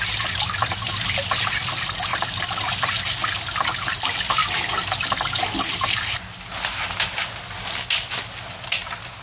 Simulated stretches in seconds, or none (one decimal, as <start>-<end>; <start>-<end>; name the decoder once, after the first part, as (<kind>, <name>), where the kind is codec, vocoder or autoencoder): none